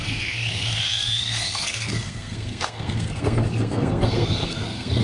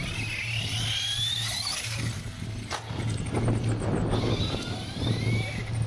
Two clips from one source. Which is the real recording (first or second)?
second